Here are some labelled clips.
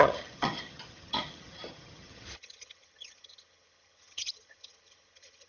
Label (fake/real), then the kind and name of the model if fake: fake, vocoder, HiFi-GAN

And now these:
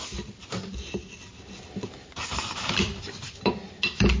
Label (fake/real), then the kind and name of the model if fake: real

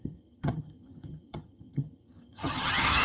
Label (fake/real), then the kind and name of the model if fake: fake, vocoder, HiFi-GAN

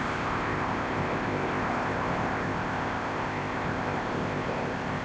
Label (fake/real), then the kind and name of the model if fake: fake, codec, ZipCodec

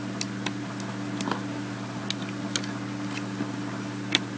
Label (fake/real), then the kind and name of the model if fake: real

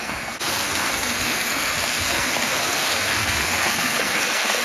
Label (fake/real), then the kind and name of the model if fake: fake, codec, SNAC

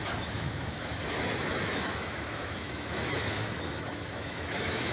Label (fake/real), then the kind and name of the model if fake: fake, autoencoder, DAC-VAE